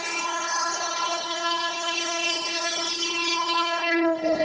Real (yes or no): no